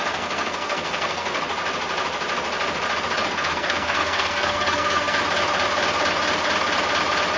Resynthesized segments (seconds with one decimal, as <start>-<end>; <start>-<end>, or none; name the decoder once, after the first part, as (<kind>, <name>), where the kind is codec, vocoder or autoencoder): 0.0-1.4 (codec, SNAC); 3.3-5.2